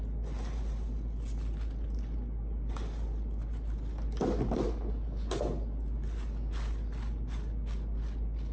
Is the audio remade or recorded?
recorded